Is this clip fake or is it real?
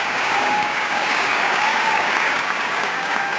fake